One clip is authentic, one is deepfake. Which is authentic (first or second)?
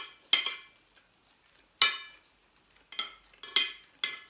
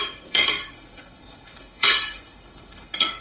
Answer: first